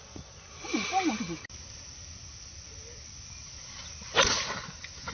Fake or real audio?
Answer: real